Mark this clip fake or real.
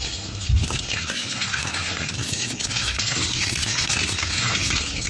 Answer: fake